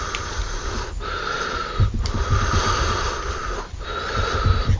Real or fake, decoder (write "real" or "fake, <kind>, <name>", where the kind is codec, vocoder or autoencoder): real